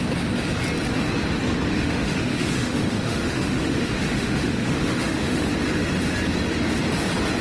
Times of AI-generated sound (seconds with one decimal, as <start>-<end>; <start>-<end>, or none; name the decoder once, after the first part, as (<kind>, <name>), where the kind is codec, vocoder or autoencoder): 1.7-5.5 (autoencoder, DAC-VAE)